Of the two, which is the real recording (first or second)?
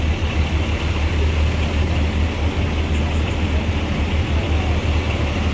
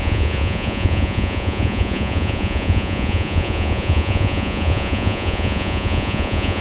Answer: first